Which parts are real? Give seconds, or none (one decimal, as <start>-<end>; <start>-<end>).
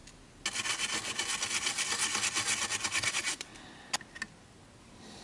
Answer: 0.0-3.1; 3.5-4.8